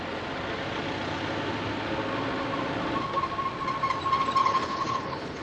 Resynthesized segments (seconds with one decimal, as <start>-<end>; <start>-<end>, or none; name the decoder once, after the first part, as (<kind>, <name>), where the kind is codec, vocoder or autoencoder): 4.4-5.4 (codec, HILCodec)